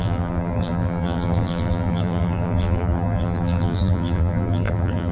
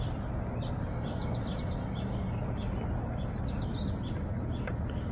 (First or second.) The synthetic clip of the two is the first